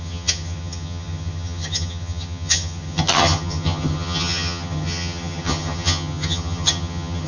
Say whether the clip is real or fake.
fake